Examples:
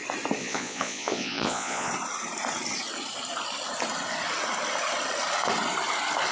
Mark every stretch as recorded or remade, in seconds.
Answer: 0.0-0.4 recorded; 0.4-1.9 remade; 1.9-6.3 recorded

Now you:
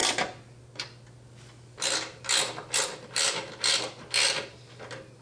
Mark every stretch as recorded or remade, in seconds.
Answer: 0.0-5.2 recorded

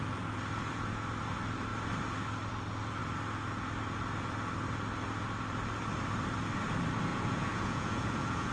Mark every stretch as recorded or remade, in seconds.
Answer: 0.0-7.1 recorded; 7.1-8.5 remade

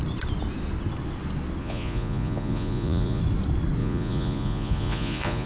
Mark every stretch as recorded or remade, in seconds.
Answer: 0.0-1.6 recorded; 1.6-3.2 remade; 3.2-3.8 recorded; 3.8-5.5 remade

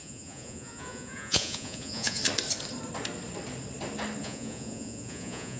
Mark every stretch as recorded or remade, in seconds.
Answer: 0.0-2.2 remade; 2.2-4.2 recorded; 4.2-5.6 remade